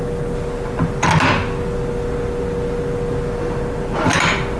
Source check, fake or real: real